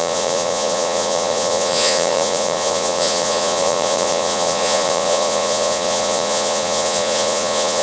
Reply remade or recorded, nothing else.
remade